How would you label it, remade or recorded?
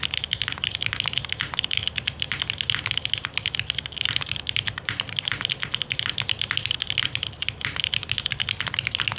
recorded